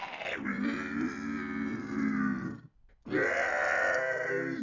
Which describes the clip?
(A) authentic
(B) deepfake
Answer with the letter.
A